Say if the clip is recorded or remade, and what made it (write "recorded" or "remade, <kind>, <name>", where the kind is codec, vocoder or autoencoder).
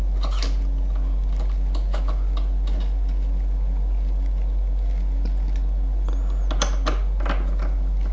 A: recorded